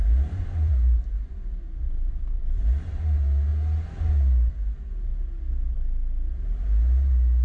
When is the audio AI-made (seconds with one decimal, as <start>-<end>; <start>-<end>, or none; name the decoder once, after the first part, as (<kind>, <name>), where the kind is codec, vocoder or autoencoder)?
0.0-2.4 (vocoder, BigVGAN v2)